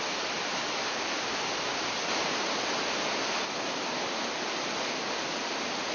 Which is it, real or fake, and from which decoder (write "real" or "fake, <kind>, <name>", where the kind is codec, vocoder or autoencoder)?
real